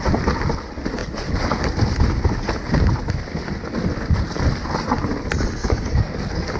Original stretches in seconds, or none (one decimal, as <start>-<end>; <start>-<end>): 0.0-5.6